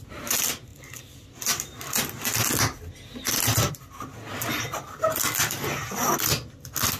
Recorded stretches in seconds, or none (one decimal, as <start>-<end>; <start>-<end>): 0.0-7.0